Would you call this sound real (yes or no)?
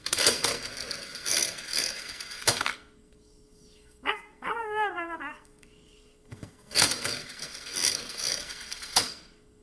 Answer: no